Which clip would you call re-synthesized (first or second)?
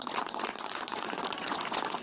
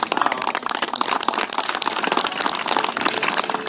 first